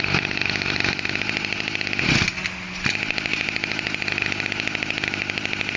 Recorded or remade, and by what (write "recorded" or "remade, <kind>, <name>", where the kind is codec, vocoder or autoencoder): recorded